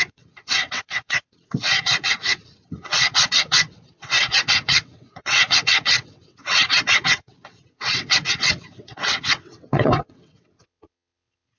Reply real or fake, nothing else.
fake